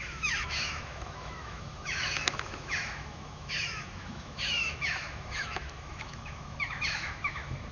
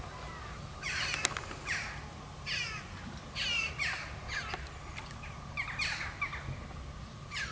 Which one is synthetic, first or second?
first